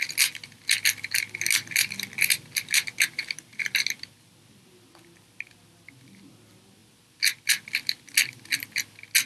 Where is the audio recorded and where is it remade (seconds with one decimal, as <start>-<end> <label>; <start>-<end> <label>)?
0.0-9.3 recorded